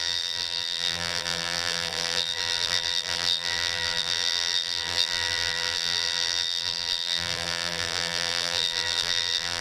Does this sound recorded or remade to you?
remade